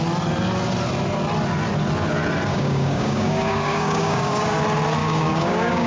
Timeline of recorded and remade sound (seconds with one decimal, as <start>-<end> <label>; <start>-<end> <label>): 0.0-2.5 recorded; 2.5-4.6 remade; 4.6-5.0 recorded; 5.0-5.9 remade

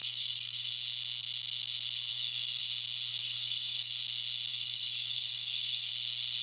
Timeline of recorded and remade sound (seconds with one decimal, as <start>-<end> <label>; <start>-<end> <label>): 0.0-0.7 remade; 0.7-2.1 recorded; 2.1-2.6 remade; 2.6-3.1 recorded; 3.1-3.9 remade; 3.9-4.5 recorded; 4.5-5.9 remade; 5.9-6.4 recorded

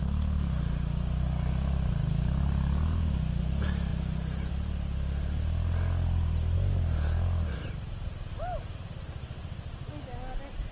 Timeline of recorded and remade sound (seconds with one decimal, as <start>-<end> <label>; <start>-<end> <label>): 0.0-10.7 recorded

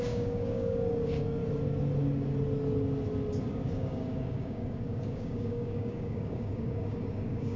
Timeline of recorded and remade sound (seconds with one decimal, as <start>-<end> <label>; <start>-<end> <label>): 0.0-1.4 remade; 1.4-3.4 recorded; 3.4-7.6 remade

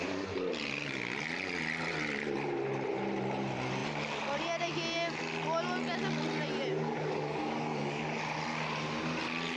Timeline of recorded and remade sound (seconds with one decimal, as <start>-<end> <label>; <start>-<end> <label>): 0.0-6.7 recorded; 6.7-8.2 remade; 8.2-9.6 recorded

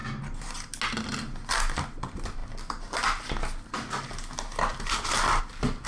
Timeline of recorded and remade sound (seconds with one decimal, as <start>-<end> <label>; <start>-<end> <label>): 0.0-5.9 recorded

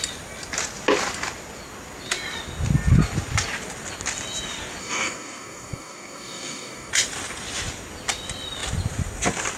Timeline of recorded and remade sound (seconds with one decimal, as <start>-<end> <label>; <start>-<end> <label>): 0.0-4.8 recorded; 4.8-6.9 remade; 6.9-9.6 recorded

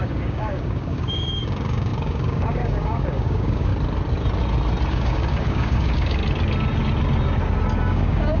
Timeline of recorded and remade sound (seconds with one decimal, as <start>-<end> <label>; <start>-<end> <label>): 0.0-3.7 remade; 3.7-4.9 recorded; 4.9-6.2 remade; 6.2-7.8 recorded; 7.8-8.4 remade